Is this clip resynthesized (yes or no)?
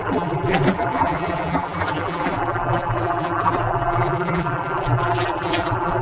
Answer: yes